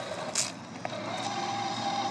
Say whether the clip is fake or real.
real